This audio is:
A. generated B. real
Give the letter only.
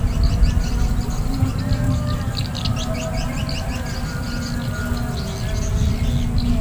B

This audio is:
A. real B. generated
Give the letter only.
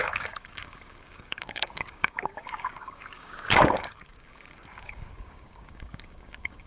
B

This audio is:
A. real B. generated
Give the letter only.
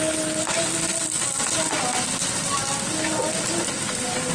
A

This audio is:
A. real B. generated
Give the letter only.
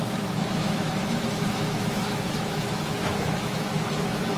B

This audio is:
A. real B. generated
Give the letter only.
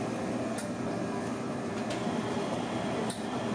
A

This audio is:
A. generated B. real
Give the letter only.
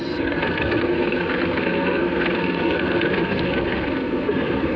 A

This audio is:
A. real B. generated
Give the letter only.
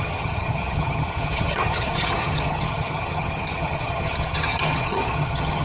B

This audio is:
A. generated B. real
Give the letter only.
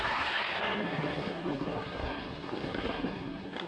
A